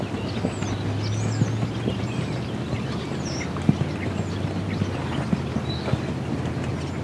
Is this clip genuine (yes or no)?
yes